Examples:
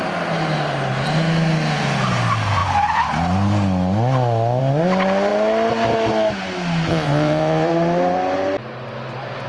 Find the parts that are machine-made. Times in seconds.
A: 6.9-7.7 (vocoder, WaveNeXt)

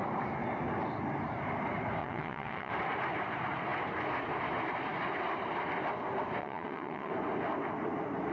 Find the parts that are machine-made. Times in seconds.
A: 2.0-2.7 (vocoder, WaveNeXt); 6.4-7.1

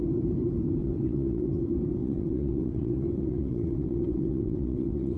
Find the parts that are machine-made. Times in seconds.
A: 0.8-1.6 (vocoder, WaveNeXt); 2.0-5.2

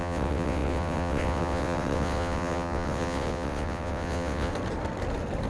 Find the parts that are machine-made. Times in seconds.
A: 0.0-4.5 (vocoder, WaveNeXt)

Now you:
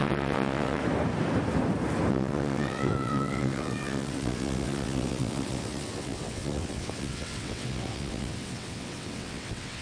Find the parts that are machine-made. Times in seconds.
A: 0.0-0.8 (vocoder, WaveNeXt); 2.1-9.8

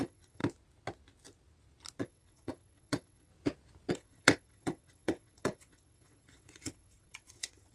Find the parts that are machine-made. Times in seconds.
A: 0.0-0.4 (vocoder, WaveNeXt); 2.0-3.3; 3.9-7.7